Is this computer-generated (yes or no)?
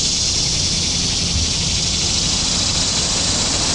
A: no